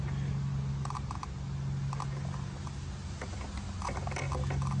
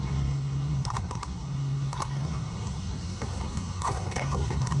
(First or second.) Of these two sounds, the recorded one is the first